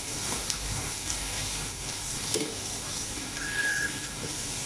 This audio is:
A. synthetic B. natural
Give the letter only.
A